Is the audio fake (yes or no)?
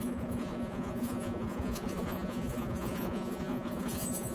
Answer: yes